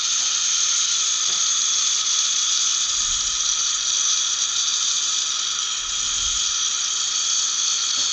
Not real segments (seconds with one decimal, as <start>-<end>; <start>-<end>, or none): none